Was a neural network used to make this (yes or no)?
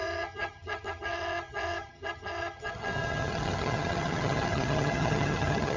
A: yes